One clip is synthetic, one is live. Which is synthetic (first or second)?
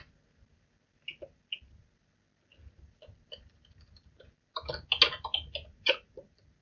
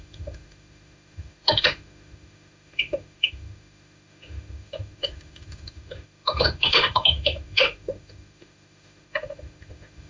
second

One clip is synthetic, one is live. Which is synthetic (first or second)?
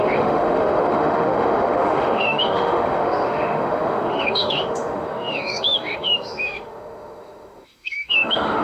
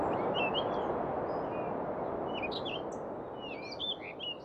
first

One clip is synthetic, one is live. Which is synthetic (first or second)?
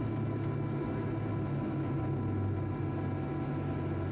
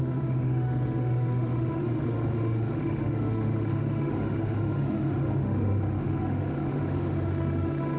second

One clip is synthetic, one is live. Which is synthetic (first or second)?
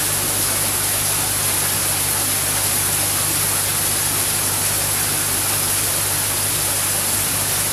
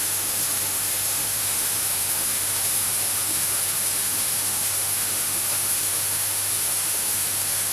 second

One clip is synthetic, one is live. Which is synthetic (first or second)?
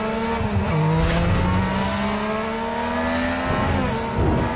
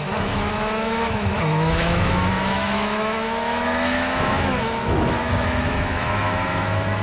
second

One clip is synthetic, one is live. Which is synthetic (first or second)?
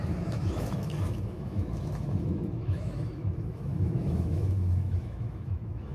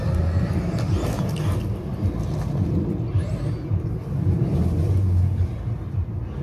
first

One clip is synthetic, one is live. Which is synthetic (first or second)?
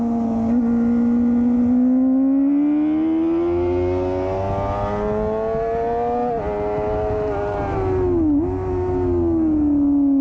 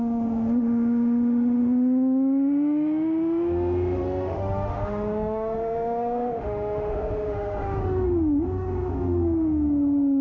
second